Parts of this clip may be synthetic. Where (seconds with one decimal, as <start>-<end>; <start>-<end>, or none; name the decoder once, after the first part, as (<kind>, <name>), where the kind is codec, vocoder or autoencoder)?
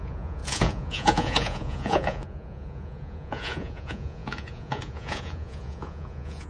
0.0-6.5 (vocoder, Vocos)